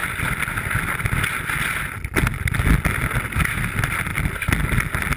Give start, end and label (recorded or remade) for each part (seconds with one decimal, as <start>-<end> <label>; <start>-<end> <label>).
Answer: 0.0-5.2 recorded